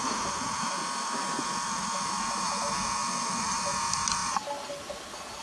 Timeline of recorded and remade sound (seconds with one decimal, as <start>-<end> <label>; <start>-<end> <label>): 0.0-5.4 recorded